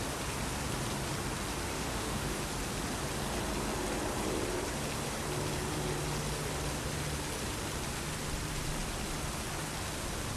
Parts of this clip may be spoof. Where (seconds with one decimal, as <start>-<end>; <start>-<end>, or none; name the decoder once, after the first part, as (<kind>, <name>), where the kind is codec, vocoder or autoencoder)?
1.7-2.4 (autoencoder, DAC-VAE)